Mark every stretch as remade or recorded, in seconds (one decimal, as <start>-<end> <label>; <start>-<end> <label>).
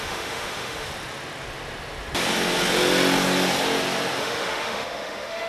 0.0-0.9 remade; 0.9-4.2 recorded; 4.2-5.5 remade